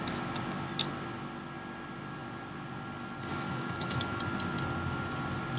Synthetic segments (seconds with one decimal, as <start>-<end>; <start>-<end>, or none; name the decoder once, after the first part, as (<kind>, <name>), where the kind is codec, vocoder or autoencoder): 3.3-4.2 (autoencoder, DAC-VAE)